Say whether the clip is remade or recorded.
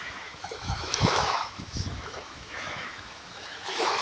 remade